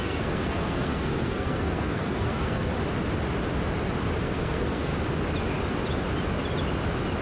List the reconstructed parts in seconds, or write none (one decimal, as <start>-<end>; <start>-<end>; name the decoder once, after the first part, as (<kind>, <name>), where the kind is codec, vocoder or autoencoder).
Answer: 0.0-2.7 (codec, SNAC); 4.2-4.9